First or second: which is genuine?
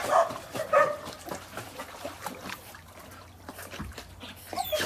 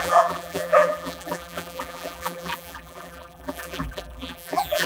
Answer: first